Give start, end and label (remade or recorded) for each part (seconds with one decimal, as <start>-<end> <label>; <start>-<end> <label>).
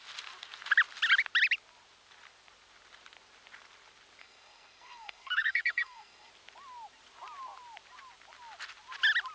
0.0-4.2 recorded; 4.2-6.3 remade; 6.3-9.3 recorded